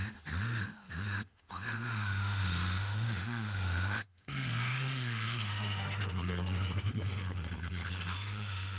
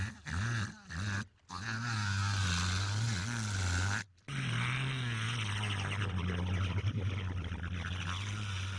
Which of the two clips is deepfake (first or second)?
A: first